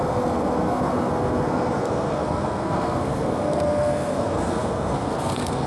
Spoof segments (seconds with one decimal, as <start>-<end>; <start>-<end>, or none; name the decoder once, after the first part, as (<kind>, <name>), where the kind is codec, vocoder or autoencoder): 0.0-5.7 (codec, SNAC)